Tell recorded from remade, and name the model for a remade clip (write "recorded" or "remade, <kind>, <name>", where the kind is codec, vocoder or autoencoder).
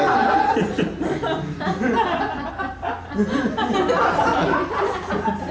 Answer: recorded